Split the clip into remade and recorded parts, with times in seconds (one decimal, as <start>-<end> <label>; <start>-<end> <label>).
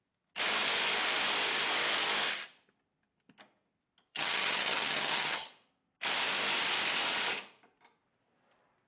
0.0-4.1 recorded; 4.1-5.5 remade; 5.5-8.9 recorded